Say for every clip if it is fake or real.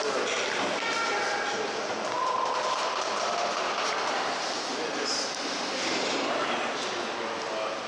real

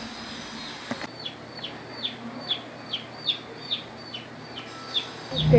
real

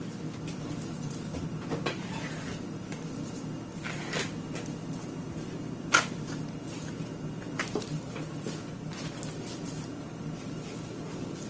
fake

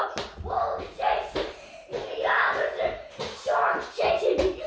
real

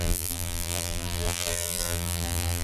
fake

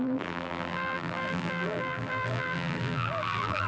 fake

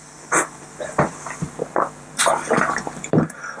fake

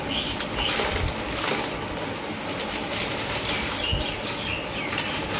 real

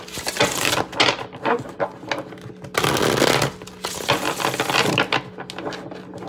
real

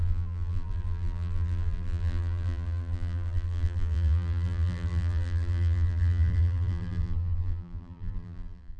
fake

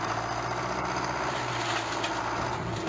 real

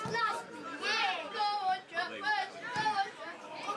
real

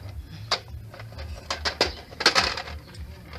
real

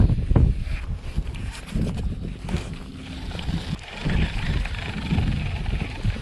real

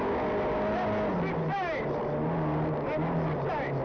real